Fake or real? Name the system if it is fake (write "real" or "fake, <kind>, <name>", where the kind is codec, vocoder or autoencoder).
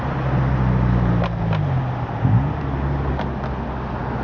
real